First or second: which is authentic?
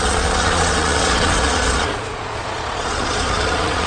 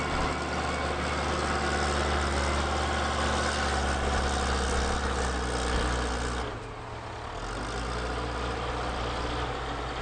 second